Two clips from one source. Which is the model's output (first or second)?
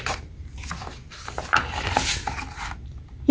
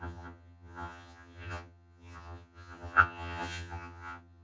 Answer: second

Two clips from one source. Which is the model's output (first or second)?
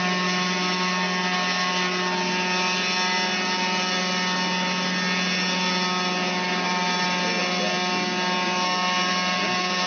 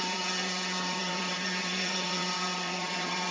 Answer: second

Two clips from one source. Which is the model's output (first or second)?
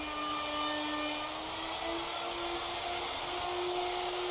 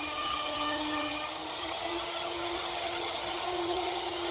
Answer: second